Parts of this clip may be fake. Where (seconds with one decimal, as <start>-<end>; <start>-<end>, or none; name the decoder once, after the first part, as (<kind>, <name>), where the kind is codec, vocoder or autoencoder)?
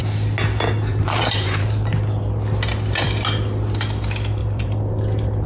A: 0.9-1.9 (vocoder, BigVGAN v2); 4.4-5.5